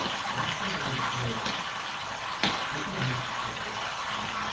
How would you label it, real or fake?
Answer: real